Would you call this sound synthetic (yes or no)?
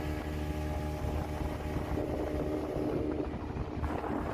no